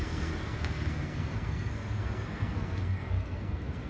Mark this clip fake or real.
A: fake